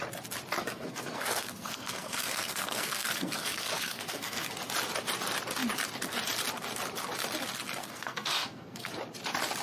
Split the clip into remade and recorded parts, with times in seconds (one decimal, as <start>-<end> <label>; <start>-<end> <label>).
0.0-0.6 recorded; 0.6-4.5 remade; 4.5-7.8 recorded; 7.8-8.9 remade; 8.9-9.6 recorded